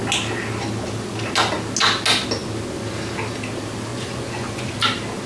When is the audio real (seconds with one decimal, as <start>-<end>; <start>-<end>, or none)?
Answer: 0.0-3.9; 4.7-5.3